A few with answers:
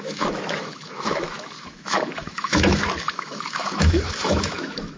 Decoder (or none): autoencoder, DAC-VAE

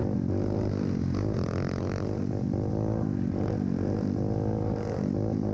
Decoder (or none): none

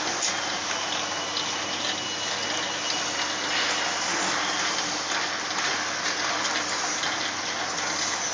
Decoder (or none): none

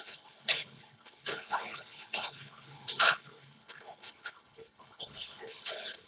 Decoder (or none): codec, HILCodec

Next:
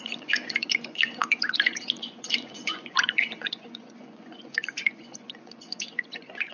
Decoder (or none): vocoder, Vocos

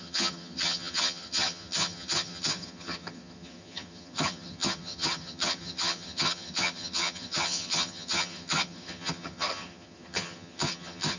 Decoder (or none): vocoder, HiFi-GAN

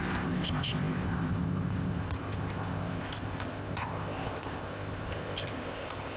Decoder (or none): codec, ZipCodec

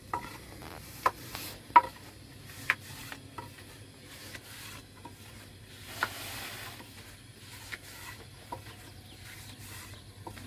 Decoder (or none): none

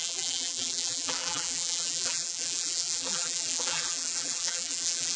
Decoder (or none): vocoder, BigVGAN v2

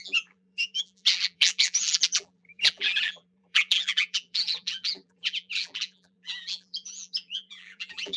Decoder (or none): vocoder, BigVGAN v2